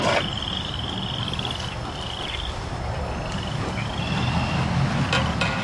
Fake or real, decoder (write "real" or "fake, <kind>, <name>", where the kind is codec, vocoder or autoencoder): real